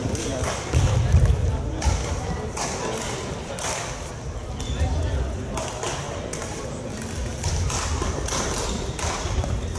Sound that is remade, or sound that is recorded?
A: recorded